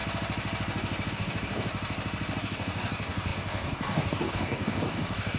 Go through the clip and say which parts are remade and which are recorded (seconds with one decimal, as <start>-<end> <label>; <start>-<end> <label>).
0.0-1.1 recorded; 1.1-1.7 remade; 1.7-2.4 recorded; 2.4-5.4 remade